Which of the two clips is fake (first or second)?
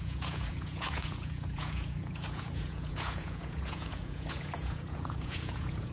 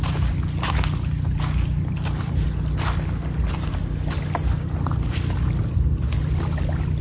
first